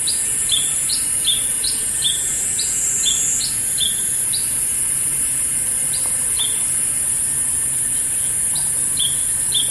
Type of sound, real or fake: fake